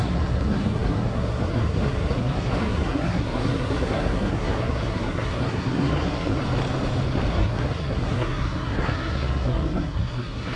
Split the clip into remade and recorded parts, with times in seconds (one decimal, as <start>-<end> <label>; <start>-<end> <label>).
0.0-6.4 remade; 6.4-7.3 recorded; 7.3-10.6 remade